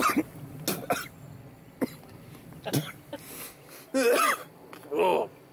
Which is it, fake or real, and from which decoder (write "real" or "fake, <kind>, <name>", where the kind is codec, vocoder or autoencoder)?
real